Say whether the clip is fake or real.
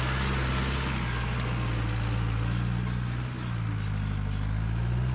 real